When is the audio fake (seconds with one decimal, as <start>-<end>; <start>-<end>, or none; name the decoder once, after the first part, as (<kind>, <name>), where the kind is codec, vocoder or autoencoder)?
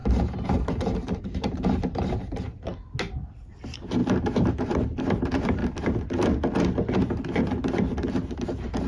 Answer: 0.0-2.7 (vocoder, BigVGAN v2); 3.4-4.0; 4.5-5.6; 8.3-8.9